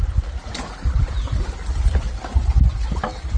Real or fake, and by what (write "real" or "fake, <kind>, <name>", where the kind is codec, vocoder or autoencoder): real